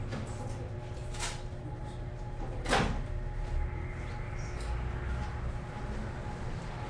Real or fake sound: real